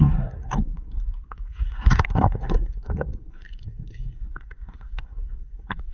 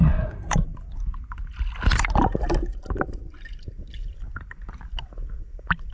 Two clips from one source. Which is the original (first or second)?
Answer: second